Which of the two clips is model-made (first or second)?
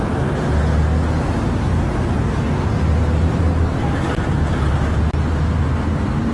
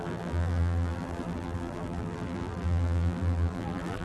second